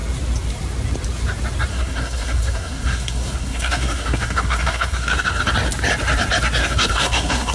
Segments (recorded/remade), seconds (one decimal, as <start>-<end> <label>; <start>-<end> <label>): 0.0-1.7 recorded; 1.7-5.4 remade; 5.4-6.6 recorded; 6.6-7.5 remade